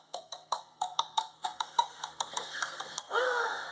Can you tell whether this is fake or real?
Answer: fake